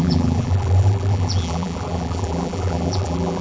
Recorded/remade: remade